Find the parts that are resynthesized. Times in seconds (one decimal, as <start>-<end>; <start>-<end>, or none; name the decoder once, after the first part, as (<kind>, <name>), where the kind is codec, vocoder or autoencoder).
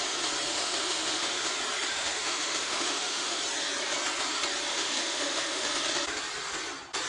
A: 0.5-1.5 (autoencoder, DAC-VAE); 1.9-3.4; 4.7-5.7